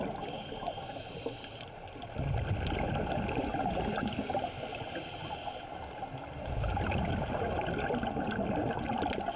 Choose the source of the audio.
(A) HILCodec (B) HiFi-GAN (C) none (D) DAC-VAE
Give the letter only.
C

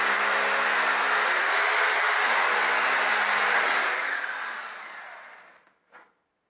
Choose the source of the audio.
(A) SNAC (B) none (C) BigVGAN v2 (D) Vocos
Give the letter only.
B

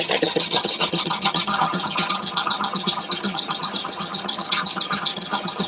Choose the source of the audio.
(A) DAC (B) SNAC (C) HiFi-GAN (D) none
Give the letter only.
C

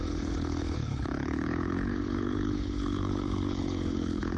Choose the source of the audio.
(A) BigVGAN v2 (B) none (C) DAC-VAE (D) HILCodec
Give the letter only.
D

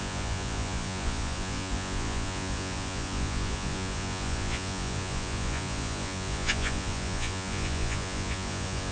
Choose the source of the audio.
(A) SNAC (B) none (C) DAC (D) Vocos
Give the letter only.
D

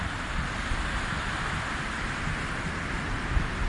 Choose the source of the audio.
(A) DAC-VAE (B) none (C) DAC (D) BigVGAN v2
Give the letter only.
B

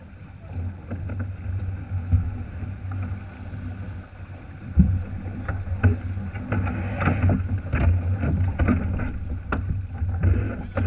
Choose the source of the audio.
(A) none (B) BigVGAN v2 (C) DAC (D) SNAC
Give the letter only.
A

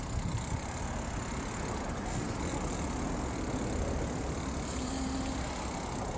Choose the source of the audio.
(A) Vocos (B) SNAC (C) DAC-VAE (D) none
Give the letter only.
D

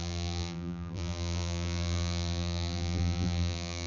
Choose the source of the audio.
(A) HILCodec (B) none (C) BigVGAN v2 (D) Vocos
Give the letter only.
C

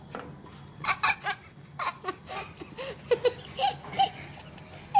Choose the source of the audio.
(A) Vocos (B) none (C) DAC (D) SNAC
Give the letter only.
B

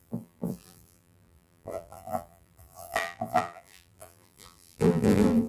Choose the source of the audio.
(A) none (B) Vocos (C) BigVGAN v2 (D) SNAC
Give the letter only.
C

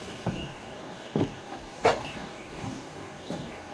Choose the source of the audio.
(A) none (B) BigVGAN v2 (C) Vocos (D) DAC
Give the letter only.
D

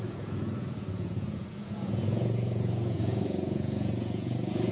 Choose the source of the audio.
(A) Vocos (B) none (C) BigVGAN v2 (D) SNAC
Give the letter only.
A